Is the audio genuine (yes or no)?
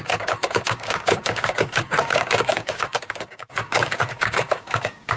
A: no